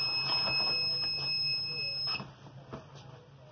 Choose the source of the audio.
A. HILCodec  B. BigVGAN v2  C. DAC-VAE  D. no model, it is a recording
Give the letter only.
D